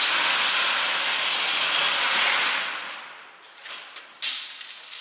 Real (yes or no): yes